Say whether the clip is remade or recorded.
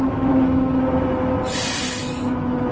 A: recorded